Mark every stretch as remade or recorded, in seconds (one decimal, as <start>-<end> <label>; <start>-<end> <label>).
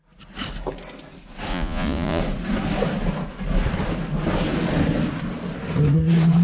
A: 0.0-1.5 recorded; 1.5-2.2 remade; 2.2-6.4 recorded